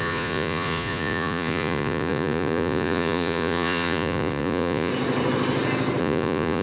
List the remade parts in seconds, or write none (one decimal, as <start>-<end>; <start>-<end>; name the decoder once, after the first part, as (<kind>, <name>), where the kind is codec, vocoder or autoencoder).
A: 0.0-4.9 (vocoder, Vocos); 6.0-6.6